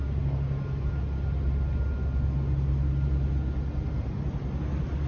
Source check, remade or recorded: recorded